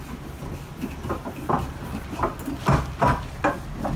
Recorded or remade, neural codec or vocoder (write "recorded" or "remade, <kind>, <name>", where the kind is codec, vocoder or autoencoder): recorded